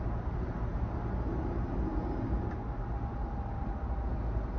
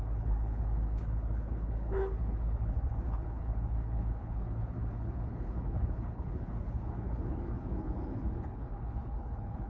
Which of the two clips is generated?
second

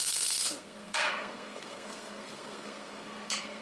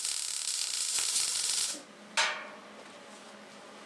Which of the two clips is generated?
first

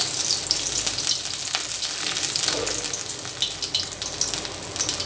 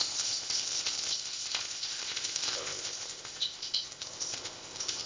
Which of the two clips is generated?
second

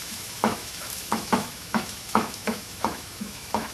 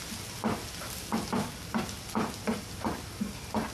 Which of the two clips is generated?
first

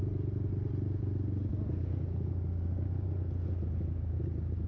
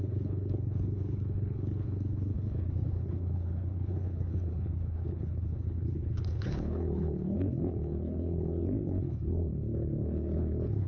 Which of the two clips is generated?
second